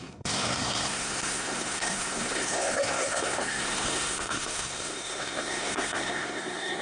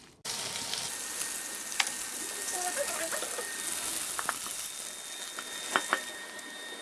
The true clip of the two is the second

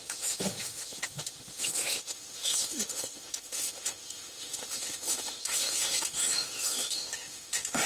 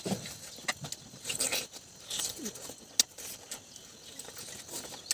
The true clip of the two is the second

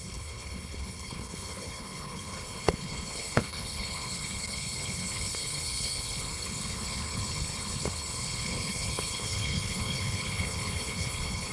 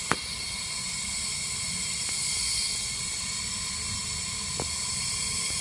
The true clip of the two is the second